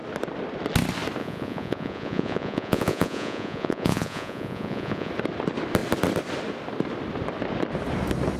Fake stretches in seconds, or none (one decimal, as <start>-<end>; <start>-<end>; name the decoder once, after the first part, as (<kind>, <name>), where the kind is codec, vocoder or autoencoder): 1.2-5.1 (vocoder, Vocos)